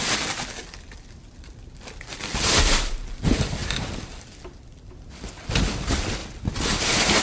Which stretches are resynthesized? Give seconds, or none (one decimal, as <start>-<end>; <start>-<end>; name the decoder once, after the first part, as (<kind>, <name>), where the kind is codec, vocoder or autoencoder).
3.6-4.9 (vocoder, BigVGAN v2)